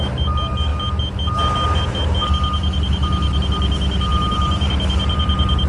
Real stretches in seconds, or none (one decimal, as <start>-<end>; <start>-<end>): 0.0-4.1; 4.7-5.7

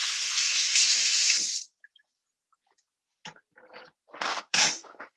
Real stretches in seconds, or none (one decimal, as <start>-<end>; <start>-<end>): 1.5-4.3

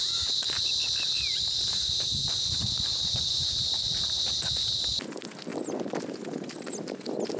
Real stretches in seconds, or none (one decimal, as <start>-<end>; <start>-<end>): 0.0-2.2; 3.6-7.4

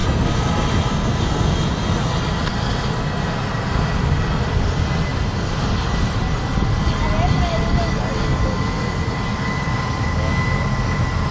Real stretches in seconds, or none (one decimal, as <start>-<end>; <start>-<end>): 0.0-11.3

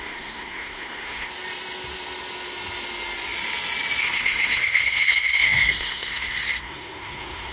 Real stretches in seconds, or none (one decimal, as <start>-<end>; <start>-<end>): 1.3-4.0

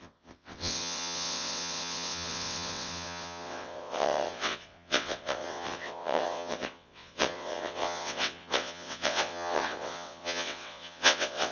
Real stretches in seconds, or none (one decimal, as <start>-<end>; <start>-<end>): none

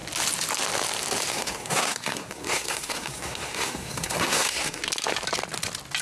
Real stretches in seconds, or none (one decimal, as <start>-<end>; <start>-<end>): 0.0-1.3; 4.9-6.0

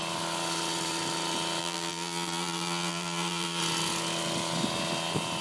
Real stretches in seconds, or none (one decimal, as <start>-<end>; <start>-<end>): 0.0-1.6; 3.6-5.4